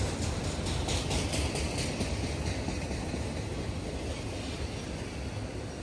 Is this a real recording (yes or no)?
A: yes